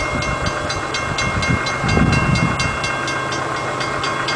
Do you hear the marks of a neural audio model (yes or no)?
no